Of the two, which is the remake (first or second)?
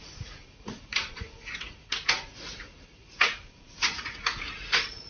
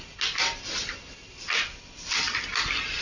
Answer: first